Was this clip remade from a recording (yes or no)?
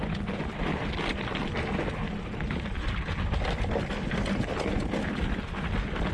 no